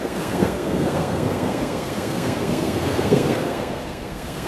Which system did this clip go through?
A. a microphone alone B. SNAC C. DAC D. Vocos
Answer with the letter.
B